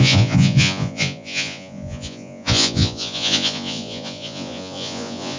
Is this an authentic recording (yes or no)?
no